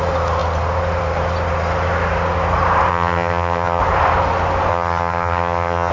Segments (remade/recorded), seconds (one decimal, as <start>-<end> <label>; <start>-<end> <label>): 0.0-2.9 recorded; 2.9-3.8 remade; 3.8-4.7 recorded; 4.7-5.9 remade